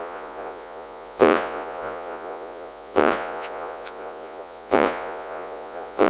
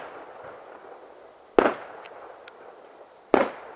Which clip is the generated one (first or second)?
first